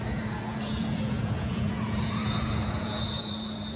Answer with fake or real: fake